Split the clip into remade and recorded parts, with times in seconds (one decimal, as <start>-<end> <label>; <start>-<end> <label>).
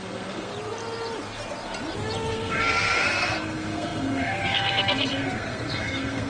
0.0-0.5 remade; 0.5-2.3 recorded; 2.3-6.3 remade